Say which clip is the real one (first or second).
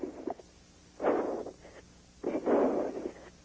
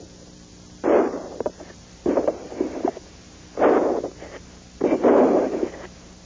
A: first